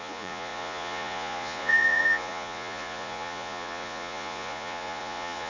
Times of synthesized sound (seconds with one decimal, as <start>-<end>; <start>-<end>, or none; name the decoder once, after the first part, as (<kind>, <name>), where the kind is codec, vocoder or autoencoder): 0.0-5.5 (vocoder, Vocos)